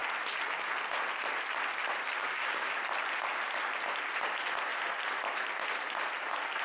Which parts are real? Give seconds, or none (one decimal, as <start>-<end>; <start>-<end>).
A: 0.0-2.2; 2.8-6.6